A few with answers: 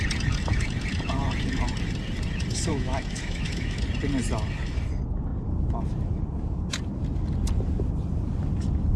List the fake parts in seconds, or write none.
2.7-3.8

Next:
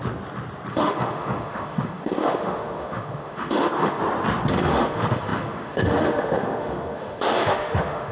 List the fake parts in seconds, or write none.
0.7-4.0; 4.5-8.1

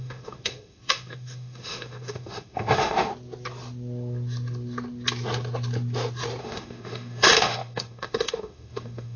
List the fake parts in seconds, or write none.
0.0-3.1; 6.4-9.2

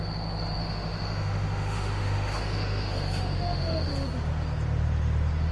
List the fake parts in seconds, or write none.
0.6-3.9

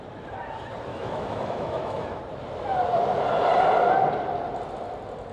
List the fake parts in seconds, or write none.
0.9-2.2

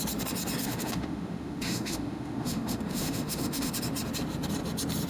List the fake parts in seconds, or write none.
0.6-3.7

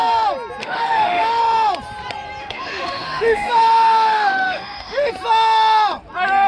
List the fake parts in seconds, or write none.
0.6-1.4; 2.4-5.1